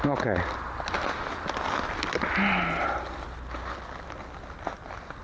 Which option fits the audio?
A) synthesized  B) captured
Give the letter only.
B